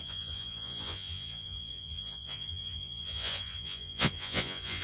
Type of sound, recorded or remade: remade